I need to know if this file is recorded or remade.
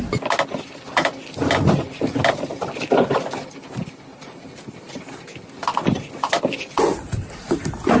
recorded